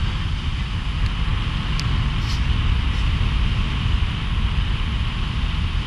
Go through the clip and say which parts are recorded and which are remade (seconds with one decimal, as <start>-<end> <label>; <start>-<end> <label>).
0.0-5.9 recorded